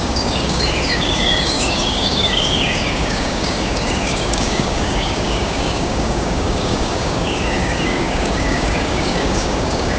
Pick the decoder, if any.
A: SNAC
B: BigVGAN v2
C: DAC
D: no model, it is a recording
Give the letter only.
C